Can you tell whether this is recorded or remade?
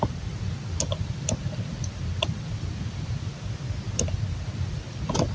recorded